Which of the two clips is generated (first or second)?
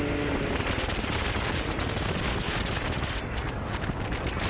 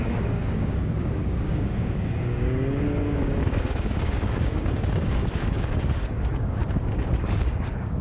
second